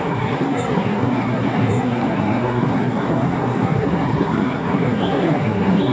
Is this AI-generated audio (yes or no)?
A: yes